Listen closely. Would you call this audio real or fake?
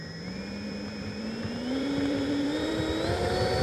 fake